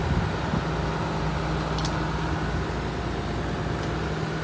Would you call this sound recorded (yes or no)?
yes